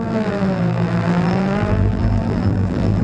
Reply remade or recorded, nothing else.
remade